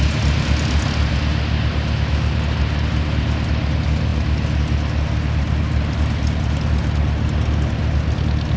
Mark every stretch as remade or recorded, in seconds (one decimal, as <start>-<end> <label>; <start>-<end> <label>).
0.0-8.6 recorded

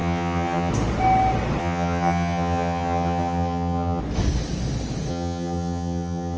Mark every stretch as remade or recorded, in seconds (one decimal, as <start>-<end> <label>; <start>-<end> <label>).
0.0-0.7 remade; 0.7-1.6 recorded; 1.6-4.0 remade; 4.0-5.1 recorded; 5.1-6.4 remade

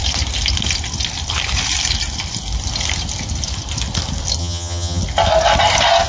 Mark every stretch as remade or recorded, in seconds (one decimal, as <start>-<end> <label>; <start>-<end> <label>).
0.0-4.4 recorded; 4.4-5.0 remade; 5.0-6.1 recorded

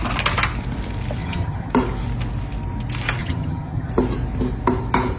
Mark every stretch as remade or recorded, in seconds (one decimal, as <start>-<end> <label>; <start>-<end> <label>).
0.0-1.2 recorded; 1.2-1.7 remade; 1.7-3.2 recorded; 3.2-3.9 remade; 3.9-5.2 recorded

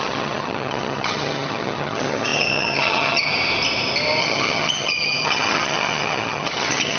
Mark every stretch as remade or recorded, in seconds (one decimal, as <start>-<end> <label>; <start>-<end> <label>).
0.0-3.3 remade; 3.3-4.2 recorded; 4.2-7.0 remade